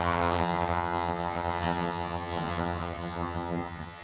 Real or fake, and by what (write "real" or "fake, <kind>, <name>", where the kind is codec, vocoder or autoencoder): fake, vocoder, HiFi-GAN